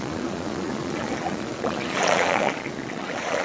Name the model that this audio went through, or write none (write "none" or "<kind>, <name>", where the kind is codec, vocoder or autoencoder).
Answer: vocoder, Vocos